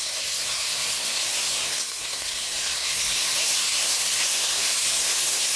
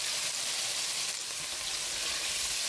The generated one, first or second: first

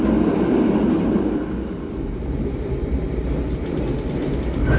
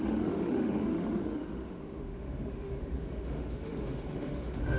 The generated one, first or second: second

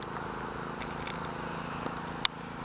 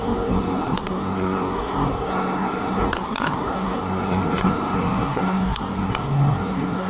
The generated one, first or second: second